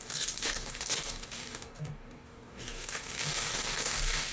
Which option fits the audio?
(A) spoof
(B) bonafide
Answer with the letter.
A